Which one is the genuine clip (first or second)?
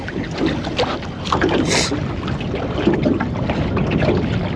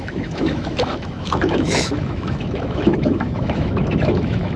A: first